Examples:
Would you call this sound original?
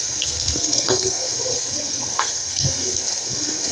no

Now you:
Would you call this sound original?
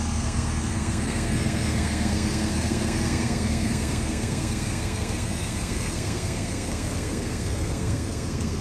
no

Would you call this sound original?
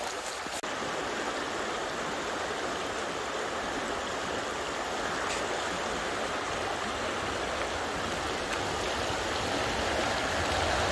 yes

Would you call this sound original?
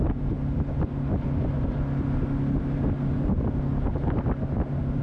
yes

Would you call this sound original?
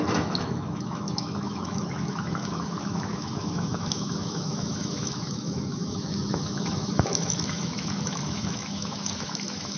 no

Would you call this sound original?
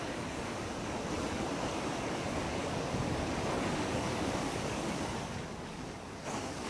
no